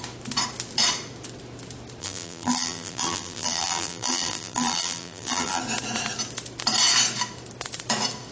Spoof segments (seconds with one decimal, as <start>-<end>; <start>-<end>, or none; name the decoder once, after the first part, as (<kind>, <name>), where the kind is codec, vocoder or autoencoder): 2.0-5.6 (vocoder, BigVGAN v2)